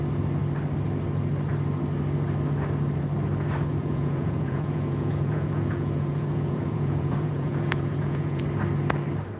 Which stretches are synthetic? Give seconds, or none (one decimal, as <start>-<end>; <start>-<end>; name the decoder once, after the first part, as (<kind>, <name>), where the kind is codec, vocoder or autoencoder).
3.7-8.4 (vocoder, Vocos)